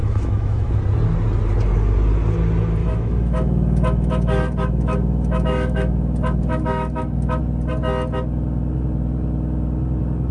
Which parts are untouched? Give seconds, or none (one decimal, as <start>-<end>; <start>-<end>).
0.8-2.8; 7.4-10.3